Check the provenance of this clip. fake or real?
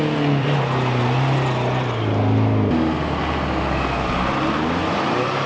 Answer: real